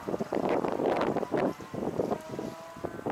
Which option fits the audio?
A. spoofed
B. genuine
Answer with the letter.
B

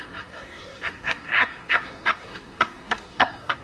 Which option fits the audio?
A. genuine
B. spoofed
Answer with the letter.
B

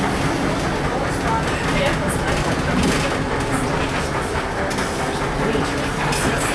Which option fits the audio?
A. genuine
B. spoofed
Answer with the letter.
A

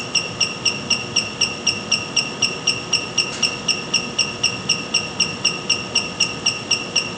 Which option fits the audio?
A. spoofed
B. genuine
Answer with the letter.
B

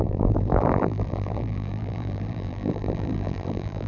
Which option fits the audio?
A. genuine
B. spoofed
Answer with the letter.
B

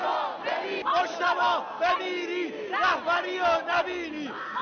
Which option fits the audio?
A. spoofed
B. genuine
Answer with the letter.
B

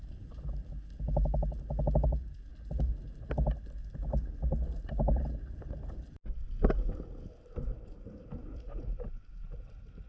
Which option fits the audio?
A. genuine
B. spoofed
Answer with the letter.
A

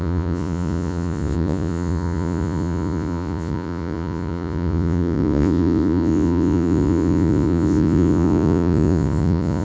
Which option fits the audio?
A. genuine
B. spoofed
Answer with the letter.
B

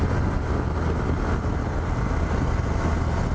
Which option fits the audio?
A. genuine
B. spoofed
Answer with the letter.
A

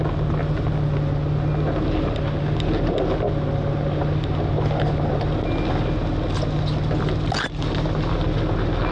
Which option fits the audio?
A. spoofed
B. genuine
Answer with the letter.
B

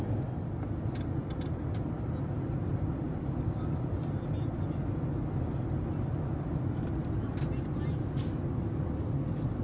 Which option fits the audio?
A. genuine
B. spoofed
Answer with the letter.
A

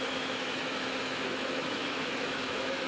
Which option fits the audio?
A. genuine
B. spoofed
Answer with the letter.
B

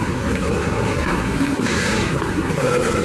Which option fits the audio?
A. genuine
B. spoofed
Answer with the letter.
B